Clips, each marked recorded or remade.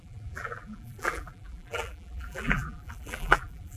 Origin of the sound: remade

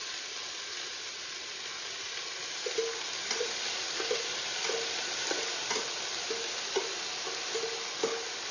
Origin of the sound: recorded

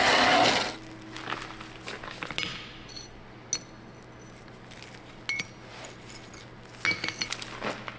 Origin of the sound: recorded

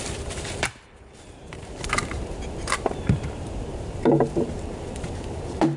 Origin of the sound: remade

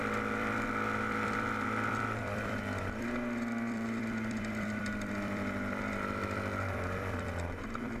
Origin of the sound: remade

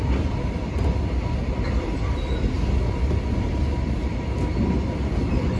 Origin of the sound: recorded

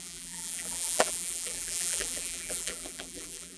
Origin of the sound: remade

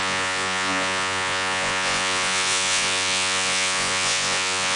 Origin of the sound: remade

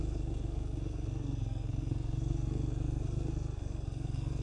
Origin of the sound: remade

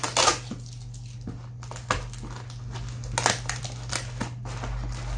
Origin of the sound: recorded